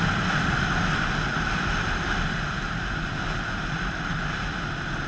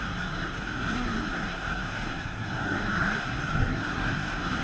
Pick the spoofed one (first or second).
second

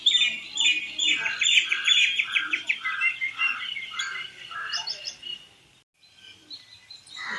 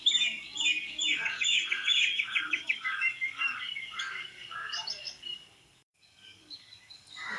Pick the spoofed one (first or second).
second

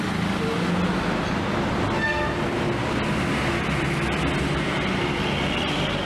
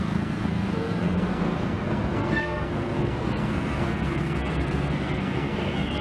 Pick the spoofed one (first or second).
second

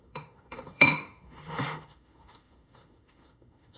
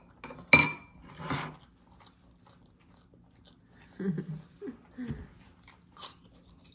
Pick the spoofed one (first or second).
first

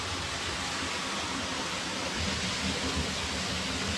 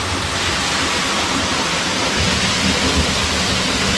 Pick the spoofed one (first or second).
second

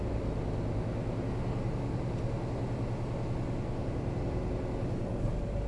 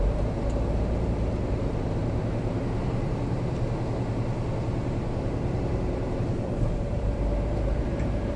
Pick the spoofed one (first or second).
second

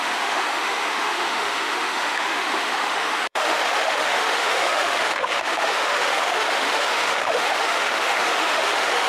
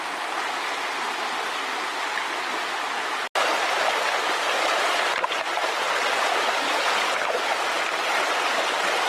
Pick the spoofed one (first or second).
first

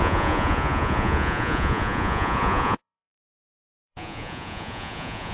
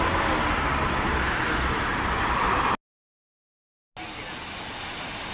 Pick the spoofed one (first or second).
first